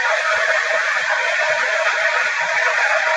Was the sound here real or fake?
fake